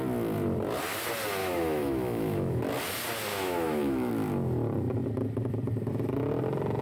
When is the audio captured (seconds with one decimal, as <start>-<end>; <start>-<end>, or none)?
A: 0.0-1.4; 2.6-3.3; 4.1-6.8